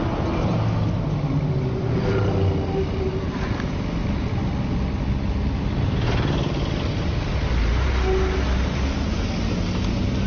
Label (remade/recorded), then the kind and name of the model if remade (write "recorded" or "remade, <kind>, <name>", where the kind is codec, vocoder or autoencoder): recorded